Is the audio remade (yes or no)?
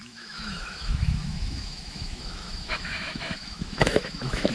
yes